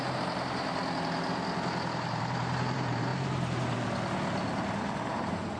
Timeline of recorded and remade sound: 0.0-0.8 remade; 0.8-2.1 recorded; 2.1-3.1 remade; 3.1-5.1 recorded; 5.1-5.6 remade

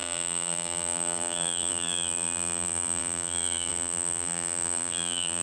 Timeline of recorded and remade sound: 0.0-5.4 remade

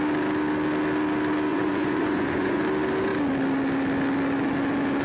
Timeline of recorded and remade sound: 0.0-1.5 recorded; 1.5-2.6 remade; 2.6-5.0 recorded

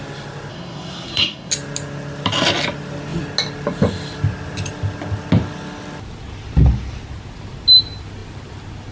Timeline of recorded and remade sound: 0.0-0.5 recorded; 0.5-1.5 remade; 1.5-8.9 recorded

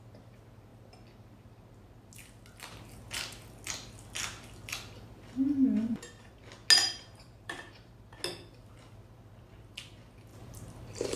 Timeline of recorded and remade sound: 0.0-6.8 recorded; 6.8-8.2 remade; 8.2-10.3 recorded; 10.3-11.2 remade